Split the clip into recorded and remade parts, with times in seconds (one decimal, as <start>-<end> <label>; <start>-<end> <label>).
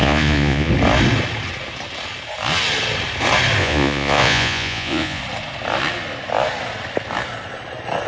0.0-0.7 remade; 0.7-3.6 recorded; 3.6-5.2 remade; 5.2-8.1 recorded